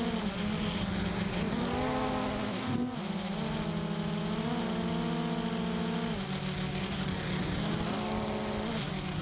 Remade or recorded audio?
recorded